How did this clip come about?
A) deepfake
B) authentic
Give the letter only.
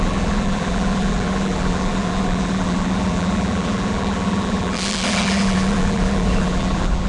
A